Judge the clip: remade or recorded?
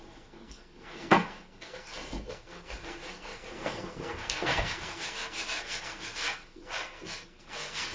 remade